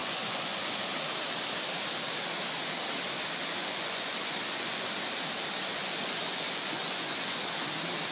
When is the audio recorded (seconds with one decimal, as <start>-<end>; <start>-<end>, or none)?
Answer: 0.8-3.6; 5.0-5.7; 7.4-8.1